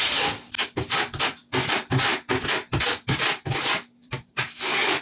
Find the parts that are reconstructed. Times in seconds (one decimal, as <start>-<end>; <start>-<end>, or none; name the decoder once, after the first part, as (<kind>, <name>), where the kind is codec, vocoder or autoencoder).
4.0-5.0 (vocoder, BigVGAN v2)